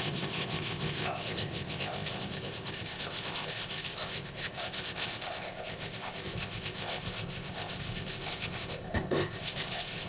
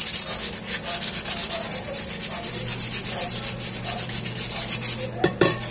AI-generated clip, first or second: first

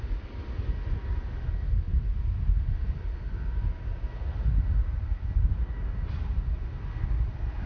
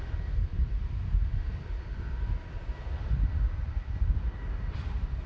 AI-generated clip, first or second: second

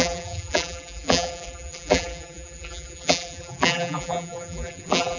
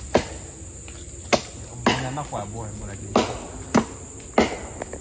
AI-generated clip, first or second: first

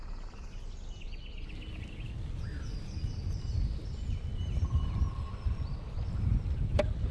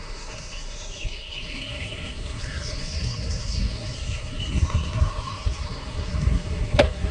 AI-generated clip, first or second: second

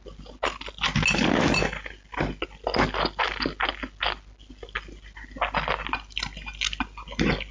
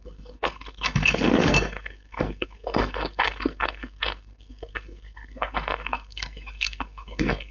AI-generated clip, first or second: second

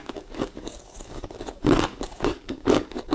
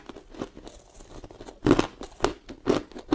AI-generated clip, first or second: first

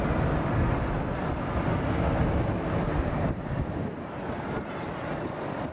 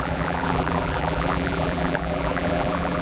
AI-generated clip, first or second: second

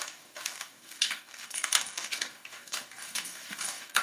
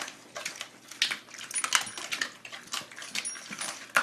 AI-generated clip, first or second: first